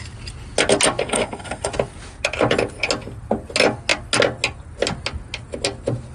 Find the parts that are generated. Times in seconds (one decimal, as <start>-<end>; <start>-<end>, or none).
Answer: 1.0-1.7